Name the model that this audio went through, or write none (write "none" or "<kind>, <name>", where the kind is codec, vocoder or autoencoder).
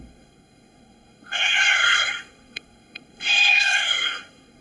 codec, SNAC